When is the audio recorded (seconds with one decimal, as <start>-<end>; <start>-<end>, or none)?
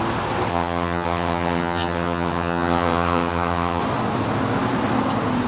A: 0.0-0.5; 3.8-5.5